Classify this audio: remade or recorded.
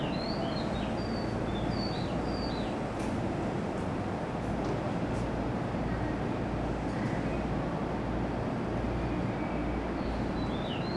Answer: recorded